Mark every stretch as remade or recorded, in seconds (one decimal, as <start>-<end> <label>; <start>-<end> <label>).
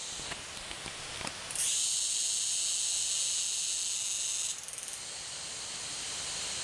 0.0-6.6 recorded